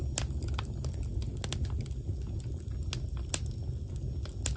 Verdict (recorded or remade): recorded